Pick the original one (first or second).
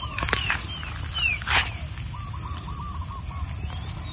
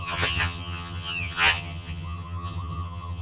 first